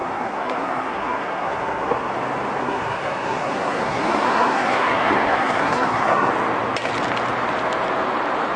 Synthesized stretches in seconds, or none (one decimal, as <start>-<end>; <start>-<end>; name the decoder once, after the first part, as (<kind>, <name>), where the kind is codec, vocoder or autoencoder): 0.0-2.1 (codec, SNAC); 2.6-6.3